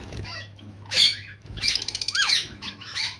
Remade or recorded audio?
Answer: remade